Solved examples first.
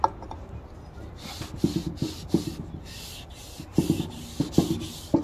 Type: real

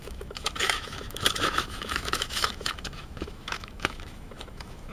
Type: fake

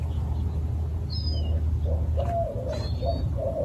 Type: real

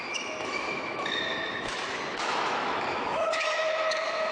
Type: fake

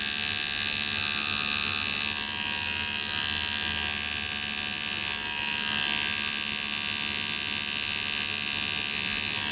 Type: real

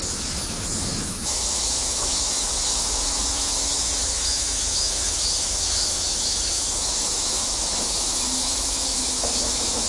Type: fake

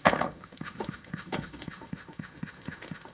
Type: fake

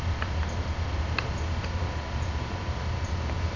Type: real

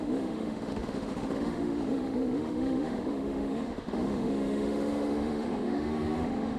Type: fake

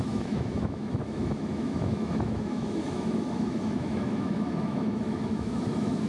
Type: fake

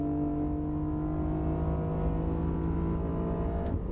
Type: real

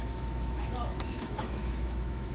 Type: fake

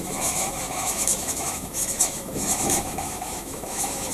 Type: fake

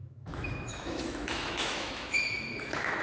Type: fake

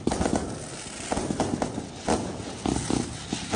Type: real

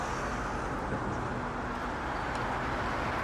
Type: real